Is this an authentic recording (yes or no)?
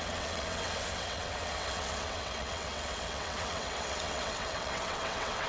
no